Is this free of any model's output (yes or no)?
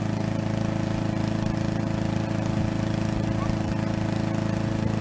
yes